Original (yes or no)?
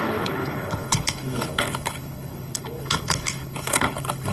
no